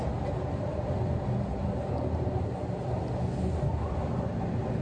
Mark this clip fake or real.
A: real